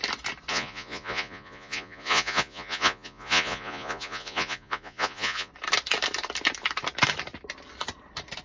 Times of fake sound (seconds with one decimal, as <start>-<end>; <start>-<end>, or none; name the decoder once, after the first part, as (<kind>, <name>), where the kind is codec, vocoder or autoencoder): 0.5-5.5 (vocoder, Vocos)